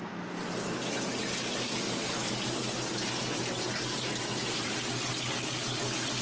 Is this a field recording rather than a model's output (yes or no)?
yes